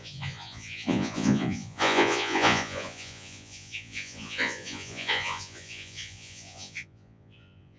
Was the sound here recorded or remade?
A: remade